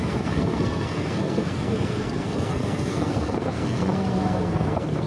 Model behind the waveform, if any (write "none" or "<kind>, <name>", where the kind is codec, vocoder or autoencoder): codec, SNAC